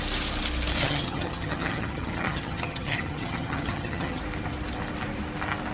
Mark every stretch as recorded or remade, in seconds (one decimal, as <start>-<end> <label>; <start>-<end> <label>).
0.0-0.8 recorded; 0.8-4.2 remade; 4.2-5.7 recorded